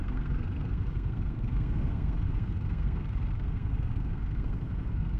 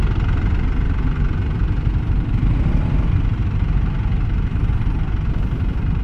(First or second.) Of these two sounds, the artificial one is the first